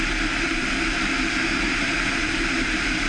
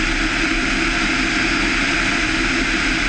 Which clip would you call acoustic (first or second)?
second